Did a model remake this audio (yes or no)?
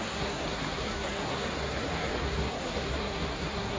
yes